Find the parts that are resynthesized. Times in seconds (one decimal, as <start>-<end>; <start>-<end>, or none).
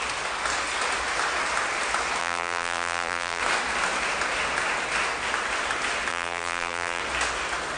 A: 2.2-3.4; 6.1-7.0